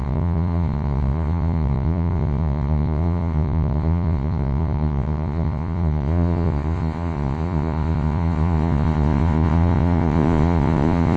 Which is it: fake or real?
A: fake